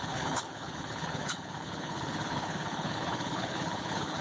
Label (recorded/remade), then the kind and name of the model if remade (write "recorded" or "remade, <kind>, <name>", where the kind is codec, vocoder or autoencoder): remade, codec, HILCodec